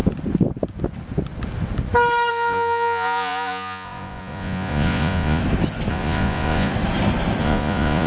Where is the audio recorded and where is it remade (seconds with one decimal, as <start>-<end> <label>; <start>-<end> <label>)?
0.0-2.3 recorded; 2.3-5.4 remade; 5.4-5.9 recorded; 5.9-6.7 remade; 6.7-7.4 recorded; 7.4-8.1 remade